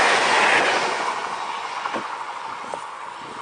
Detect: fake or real fake